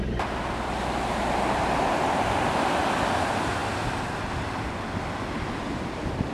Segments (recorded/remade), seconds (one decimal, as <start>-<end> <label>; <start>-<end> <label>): 0.0-6.3 recorded